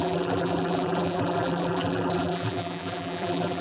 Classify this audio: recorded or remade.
remade